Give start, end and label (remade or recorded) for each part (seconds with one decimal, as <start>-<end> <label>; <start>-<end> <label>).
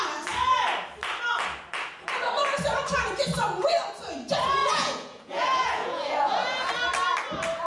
0.0-4.6 recorded; 4.6-6.7 remade; 6.7-7.7 recorded